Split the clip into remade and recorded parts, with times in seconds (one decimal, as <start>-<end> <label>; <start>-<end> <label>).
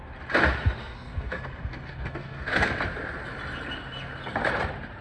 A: 0.0-0.8 recorded; 0.8-2.8 remade; 2.8-5.0 recorded